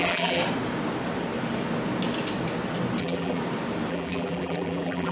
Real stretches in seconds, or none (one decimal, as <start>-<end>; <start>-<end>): 0.4-3.0; 3.4-3.9